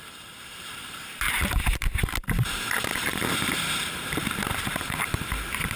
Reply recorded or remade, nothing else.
remade